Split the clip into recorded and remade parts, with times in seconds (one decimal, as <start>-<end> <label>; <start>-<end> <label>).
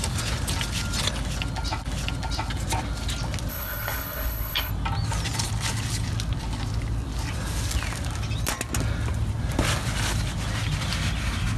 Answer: 0.0-3.5 recorded; 3.5-4.7 remade; 4.7-11.6 recorded